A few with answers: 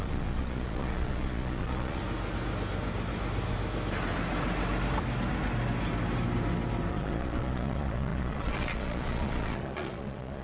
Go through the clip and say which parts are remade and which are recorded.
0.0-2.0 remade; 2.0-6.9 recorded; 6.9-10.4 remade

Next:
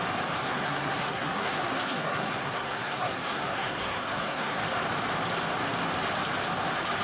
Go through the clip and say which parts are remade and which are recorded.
0.0-0.4 recorded; 0.4-4.6 remade; 4.6-7.0 recorded

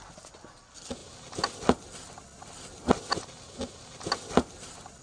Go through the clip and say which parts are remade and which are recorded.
0.0-5.0 recorded

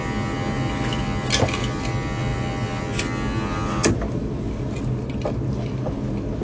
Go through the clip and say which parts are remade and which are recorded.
0.0-6.4 recorded